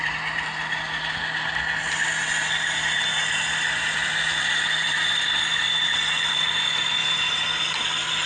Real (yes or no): yes